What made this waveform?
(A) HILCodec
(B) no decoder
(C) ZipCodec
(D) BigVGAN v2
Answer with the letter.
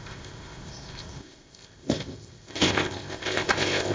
C